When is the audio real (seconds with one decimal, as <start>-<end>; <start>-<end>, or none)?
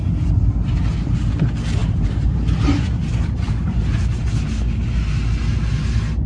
0.0-1.8; 4.1-6.3